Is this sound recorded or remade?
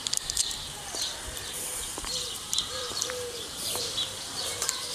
remade